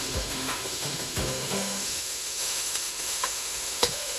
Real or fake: fake